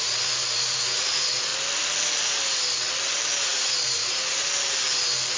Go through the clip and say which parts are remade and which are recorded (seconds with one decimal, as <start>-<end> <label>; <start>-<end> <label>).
0.0-1.5 remade; 1.5-3.4 recorded; 3.4-4.4 remade; 4.4-5.4 recorded